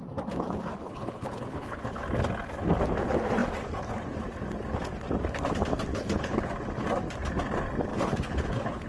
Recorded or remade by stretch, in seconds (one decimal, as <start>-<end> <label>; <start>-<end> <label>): 0.0-0.7 recorded; 0.7-1.8 remade; 1.8-5.9 recorded; 5.9-6.5 remade; 6.5-7.9 recorded; 7.9-8.9 remade

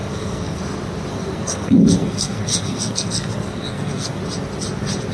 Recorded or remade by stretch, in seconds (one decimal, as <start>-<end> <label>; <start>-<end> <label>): 0.0-0.6 remade; 0.6-1.1 recorded; 1.1-4.2 remade; 4.2-5.1 recorded

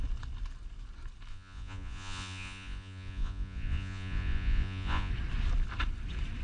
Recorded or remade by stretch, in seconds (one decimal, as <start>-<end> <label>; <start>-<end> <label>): 0.0-1.3 recorded; 1.3-5.1 remade; 5.1-6.4 recorded